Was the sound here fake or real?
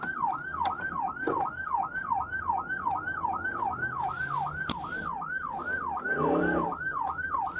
real